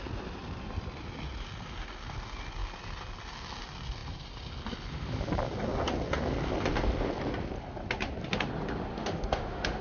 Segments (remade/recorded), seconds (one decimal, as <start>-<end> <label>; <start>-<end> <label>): 0.0-8.9 recorded; 8.9-9.8 remade